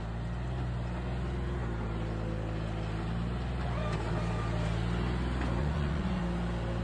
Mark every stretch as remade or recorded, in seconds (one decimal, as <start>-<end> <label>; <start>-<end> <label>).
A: 0.0-5.6 recorded; 5.6-6.2 remade; 6.2-6.8 recorded